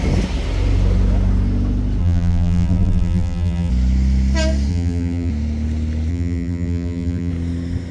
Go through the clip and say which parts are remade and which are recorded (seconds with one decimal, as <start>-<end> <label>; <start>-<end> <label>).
0.0-2.0 recorded; 2.0-3.7 remade; 3.7-4.7 recorded; 4.7-5.3 remade; 5.3-6.1 recorded; 6.1-7.3 remade; 7.3-7.9 recorded